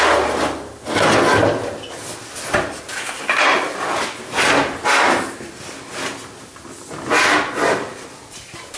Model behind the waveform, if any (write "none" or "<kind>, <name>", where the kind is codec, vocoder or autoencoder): none